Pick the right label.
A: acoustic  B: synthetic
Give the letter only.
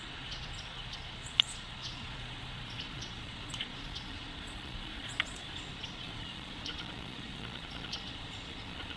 B